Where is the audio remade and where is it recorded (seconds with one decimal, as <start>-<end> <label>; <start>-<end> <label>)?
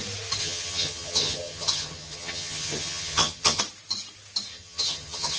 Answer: 0.0-0.4 recorded; 0.4-3.6 remade; 3.6-4.5 recorded; 4.5-5.4 remade